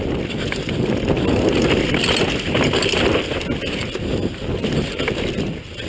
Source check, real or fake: real